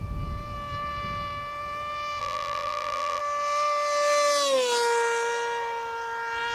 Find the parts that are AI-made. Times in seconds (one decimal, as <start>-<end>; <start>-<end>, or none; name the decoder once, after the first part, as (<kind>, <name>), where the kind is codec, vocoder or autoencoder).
2.2-3.2 (vocoder, BigVGAN v2)